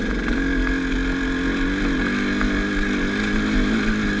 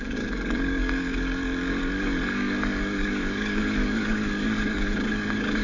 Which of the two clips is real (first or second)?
first